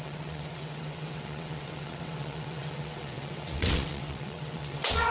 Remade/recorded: remade